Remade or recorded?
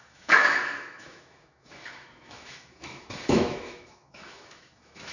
remade